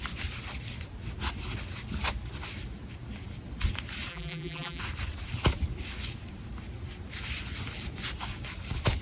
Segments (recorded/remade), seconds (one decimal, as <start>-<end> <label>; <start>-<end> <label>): 0.0-4.1 recorded; 4.1-4.8 remade; 4.8-9.0 recorded